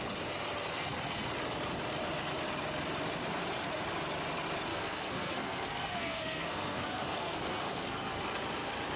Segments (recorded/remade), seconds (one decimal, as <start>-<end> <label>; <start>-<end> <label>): 0.0-4.7 recorded; 4.7-8.2 remade; 8.2-9.0 recorded